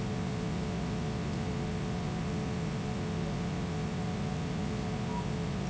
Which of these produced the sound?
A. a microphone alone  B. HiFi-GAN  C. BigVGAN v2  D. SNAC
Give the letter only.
A